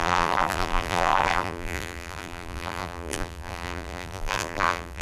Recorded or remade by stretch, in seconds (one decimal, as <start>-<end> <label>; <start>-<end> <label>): 0.0-5.0 remade